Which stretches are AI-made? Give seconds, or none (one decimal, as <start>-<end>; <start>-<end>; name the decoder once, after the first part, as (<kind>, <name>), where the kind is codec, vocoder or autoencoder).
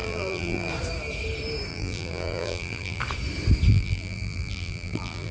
0.0-0.7 (vocoder, BigVGAN v2); 1.7-3.0; 3.7-5.3